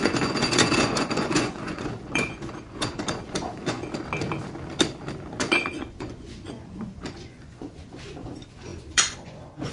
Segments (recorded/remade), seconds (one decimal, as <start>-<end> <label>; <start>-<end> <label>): 0.0-3.8 remade; 3.8-5.4 recorded; 5.4-9.7 remade